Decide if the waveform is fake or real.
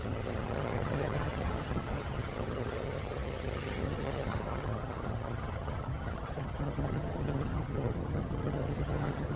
fake